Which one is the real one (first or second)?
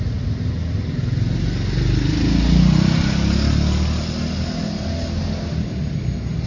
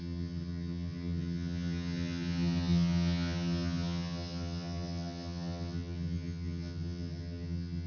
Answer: first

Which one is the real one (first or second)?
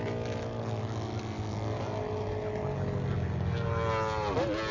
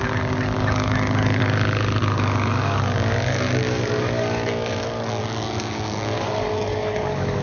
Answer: first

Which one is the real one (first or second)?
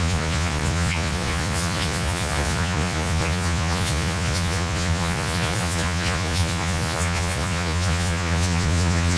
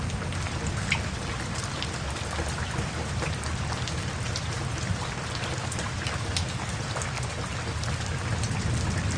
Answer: second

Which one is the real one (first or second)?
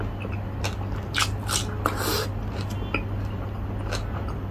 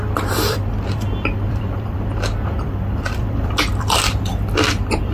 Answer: first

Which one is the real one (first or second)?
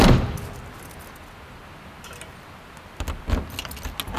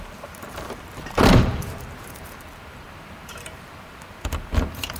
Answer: first